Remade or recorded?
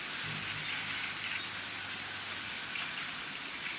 recorded